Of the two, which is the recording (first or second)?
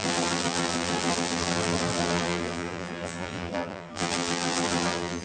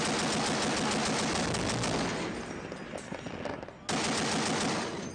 second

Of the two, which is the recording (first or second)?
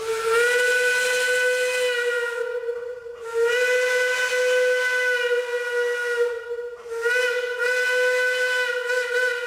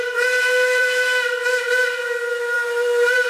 first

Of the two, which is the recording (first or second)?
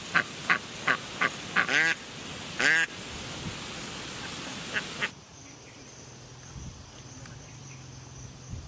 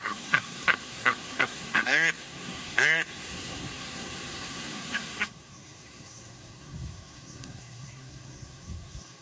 first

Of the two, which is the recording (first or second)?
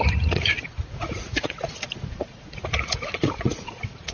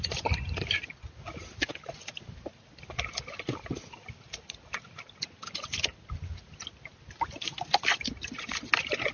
second